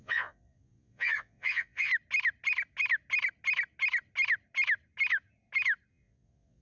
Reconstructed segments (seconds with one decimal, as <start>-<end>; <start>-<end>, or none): 0.0-1.9; 5.9-6.6

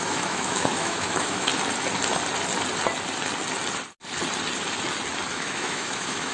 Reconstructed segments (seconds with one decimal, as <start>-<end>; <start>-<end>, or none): 0.0-1.5; 5.3-6.3

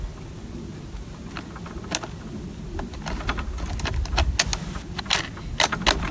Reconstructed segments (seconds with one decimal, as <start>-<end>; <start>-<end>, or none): none

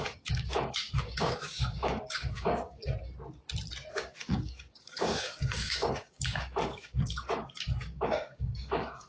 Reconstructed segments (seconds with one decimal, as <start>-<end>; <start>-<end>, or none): 0.0-2.8; 3.9-9.1